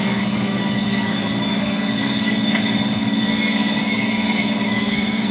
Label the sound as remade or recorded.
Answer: remade